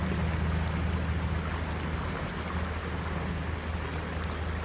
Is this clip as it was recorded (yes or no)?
yes